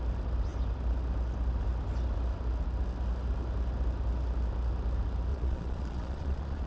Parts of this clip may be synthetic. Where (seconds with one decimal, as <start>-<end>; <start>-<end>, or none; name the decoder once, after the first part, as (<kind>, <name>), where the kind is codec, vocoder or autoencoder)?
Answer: 5.3-6.7 (vocoder, Vocos)